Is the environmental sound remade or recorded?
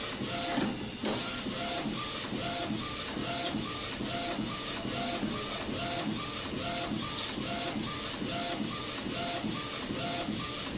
recorded